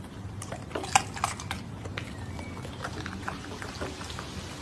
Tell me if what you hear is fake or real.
real